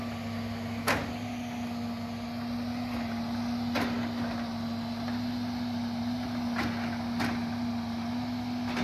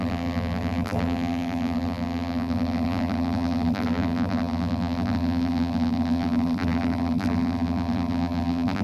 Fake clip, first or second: second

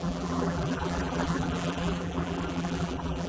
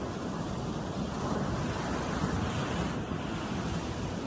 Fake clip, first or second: first